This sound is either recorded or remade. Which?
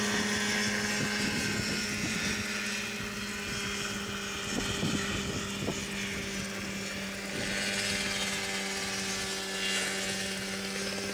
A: recorded